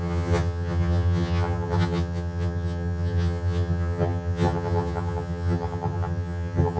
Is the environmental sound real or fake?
fake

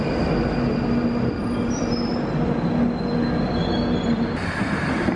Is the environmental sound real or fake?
real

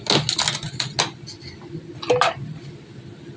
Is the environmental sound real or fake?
real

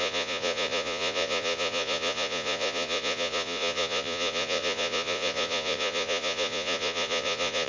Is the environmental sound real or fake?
fake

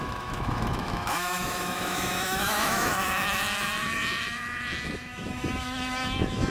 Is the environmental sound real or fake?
fake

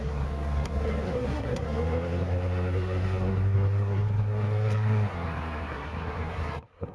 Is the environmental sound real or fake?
fake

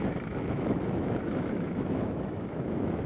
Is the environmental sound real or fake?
fake